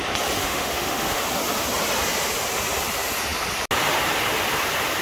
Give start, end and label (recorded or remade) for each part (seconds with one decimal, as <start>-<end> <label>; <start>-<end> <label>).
0.0-0.4 recorded; 0.4-1.2 remade; 1.2-5.0 recorded